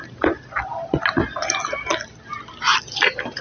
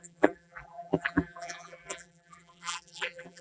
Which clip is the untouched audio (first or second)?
first